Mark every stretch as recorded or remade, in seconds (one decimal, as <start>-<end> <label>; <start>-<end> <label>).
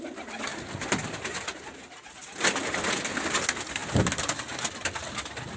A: 0.0-0.5 remade; 0.5-3.2 recorded; 3.2-3.8 remade; 3.8-4.7 recorded; 4.7-5.6 remade